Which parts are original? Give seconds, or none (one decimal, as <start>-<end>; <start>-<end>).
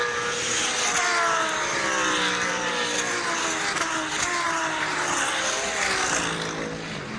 0.0-7.2